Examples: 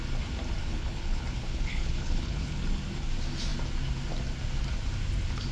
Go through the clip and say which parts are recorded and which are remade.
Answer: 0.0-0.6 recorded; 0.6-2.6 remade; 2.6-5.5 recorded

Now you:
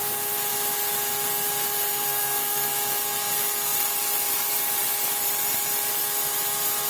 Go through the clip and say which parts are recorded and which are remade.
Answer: 0.0-1.9 recorded; 1.9-2.7 remade; 2.7-6.9 recorded

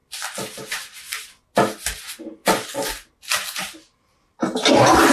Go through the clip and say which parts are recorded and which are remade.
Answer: 0.0-5.1 recorded

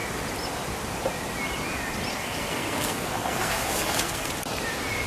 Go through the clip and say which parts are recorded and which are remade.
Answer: 0.0-2.1 recorded; 2.1-4.3 remade; 4.3-5.1 recorded

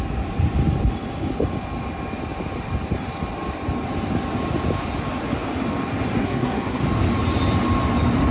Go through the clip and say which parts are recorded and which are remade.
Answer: 0.0-6.2 recorded; 6.2-6.8 remade; 6.8-8.3 recorded